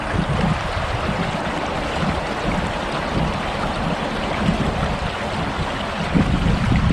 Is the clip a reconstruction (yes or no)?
no